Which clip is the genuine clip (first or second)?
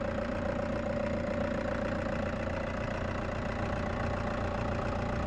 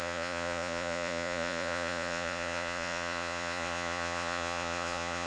first